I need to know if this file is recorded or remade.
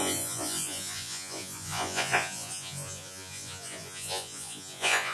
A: remade